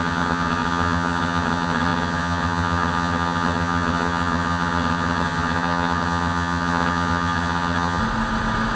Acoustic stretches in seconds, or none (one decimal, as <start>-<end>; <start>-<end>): 8.0-8.8